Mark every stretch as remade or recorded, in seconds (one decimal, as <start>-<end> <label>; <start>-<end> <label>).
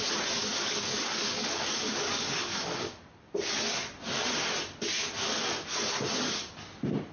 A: 0.0-0.4 recorded; 0.4-3.0 remade; 3.0-7.1 recorded